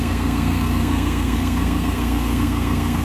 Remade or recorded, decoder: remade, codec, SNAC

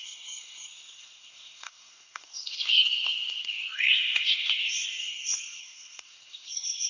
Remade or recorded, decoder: remade, codec, SNAC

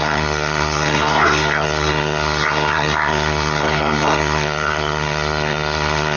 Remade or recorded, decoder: remade, codec, SNAC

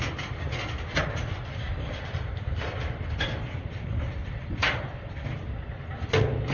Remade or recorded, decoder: recorded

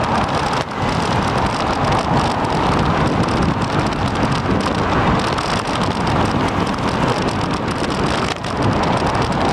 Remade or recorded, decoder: recorded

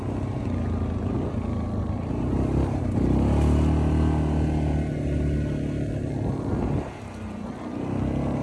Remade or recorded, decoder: recorded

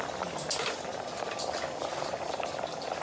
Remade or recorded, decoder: recorded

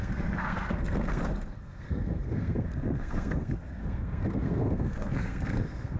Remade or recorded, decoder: remade, codec, SNAC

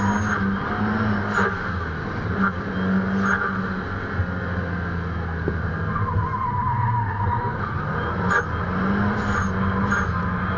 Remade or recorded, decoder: recorded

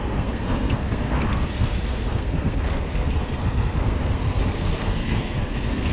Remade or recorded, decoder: remade, codec, SNAC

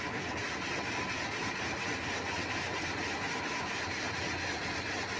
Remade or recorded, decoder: recorded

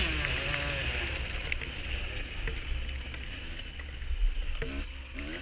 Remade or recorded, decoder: recorded